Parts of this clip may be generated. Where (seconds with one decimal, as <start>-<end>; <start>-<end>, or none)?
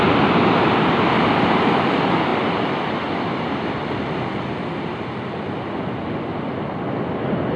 none